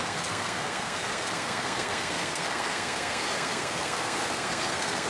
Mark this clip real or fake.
fake